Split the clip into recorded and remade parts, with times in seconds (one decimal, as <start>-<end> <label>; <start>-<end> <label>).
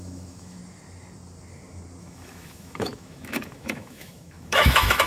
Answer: 0.0-0.6 remade; 0.6-2.0 recorded; 2.0-5.1 remade